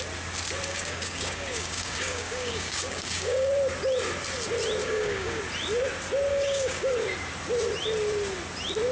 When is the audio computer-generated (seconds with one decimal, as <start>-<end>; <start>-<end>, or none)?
0.7-3.5; 4.8-5.4; 6.3-6.9